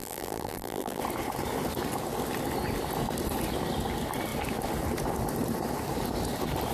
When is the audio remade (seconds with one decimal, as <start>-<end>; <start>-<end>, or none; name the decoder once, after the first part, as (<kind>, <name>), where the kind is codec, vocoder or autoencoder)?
0.0-1.0 (vocoder, BigVGAN v2)